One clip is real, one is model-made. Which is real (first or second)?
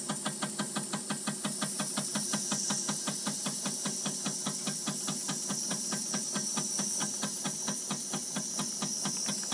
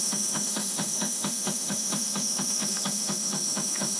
first